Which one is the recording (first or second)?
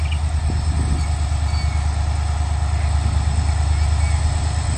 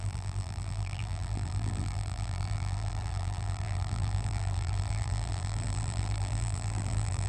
first